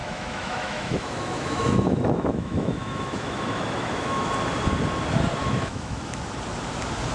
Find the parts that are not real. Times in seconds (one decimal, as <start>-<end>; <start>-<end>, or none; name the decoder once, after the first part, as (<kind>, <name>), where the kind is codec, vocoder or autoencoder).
0.0-4.3 (autoencoder, DAC-VAE); 5.4-6.2